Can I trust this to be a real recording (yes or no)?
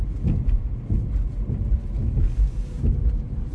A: yes